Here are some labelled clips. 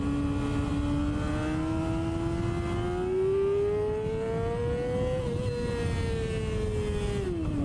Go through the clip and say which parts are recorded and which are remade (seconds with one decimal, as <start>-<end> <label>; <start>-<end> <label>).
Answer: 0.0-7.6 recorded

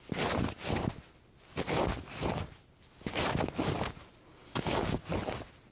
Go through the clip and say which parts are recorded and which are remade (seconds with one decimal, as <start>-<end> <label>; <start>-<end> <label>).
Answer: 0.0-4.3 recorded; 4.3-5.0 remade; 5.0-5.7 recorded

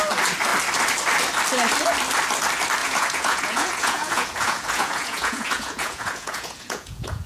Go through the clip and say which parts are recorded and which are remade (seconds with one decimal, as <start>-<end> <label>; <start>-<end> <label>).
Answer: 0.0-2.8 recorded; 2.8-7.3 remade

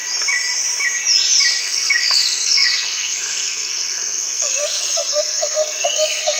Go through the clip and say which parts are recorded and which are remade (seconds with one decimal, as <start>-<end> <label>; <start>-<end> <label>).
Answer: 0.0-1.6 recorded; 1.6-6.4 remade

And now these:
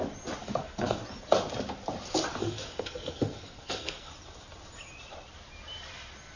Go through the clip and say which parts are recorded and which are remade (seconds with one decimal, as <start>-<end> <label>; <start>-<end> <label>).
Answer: 0.0-0.4 recorded; 0.4-1.0 remade; 1.0-2.4 recorded; 2.4-4.1 remade; 4.1-6.4 recorded